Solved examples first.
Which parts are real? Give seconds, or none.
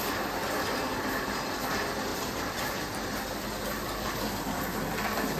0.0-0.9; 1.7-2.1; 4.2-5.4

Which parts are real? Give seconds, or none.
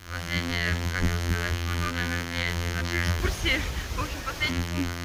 3.2-4.5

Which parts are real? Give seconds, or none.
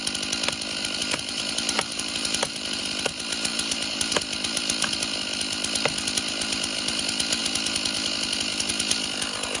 0.0-1.0; 2.8-3.5; 4.2-9.6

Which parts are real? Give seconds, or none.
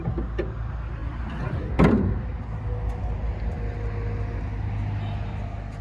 0.0-1.0; 4.5-5.8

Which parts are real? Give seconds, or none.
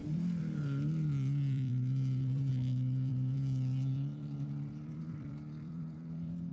2.5-3.1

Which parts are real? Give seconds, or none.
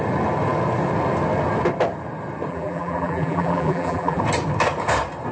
0.0-2.5; 4.2-5.3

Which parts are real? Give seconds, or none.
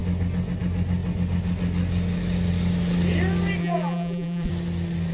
0.0-3.6; 4.5-5.1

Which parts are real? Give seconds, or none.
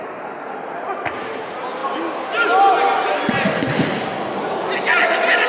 0.0-5.5